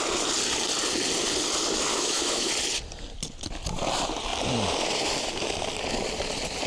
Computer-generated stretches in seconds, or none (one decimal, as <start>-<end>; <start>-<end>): 1.9-2.5